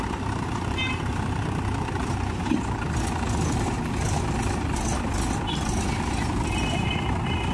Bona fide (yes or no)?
yes